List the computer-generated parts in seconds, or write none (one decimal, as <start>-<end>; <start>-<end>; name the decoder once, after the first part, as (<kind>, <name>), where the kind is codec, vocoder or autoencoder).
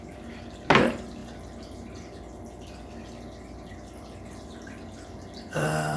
none